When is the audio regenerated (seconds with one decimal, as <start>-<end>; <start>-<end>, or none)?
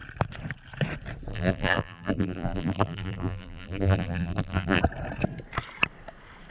1.3-4.8